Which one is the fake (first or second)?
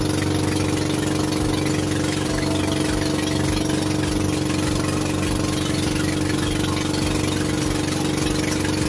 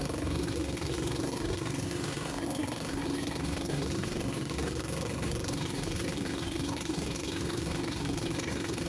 second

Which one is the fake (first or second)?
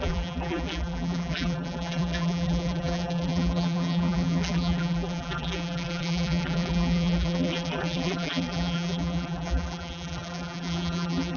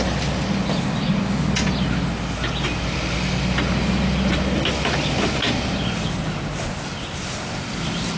first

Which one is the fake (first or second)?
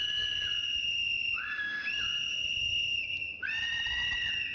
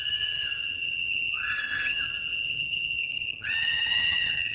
second